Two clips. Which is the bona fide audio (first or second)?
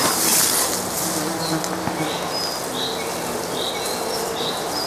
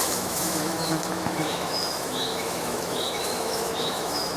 first